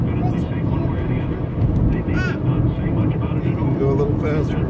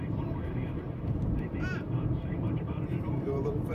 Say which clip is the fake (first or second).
second